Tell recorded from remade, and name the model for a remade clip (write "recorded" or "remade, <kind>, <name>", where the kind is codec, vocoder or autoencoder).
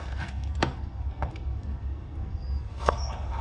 remade, codec, SNAC